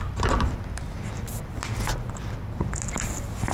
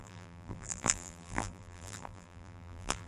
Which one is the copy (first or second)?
second